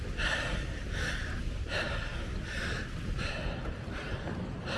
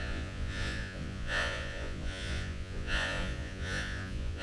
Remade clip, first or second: second